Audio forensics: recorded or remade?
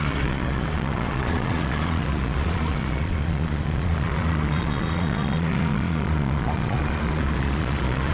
remade